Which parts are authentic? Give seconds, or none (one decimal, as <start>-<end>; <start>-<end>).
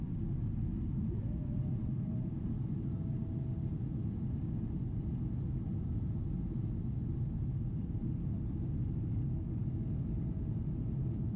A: 0.0-0.7; 2.5-11.4